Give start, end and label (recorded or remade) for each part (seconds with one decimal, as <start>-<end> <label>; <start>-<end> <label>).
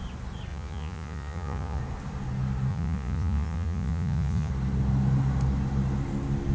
0.0-0.5 recorded; 0.5-1.8 remade; 1.8-2.7 recorded; 2.7-4.5 remade; 4.5-6.5 recorded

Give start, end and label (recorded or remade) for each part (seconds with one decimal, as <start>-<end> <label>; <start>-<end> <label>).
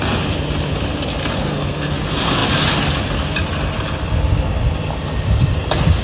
0.0-1.4 recorded; 1.4-2.0 remade; 2.0-6.0 recorded